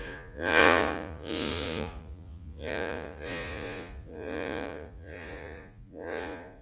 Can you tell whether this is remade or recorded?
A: remade